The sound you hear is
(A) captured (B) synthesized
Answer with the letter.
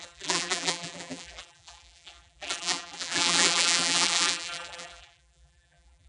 B